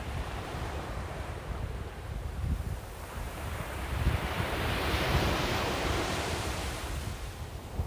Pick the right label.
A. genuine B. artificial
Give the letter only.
B